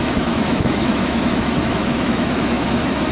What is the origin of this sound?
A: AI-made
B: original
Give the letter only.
A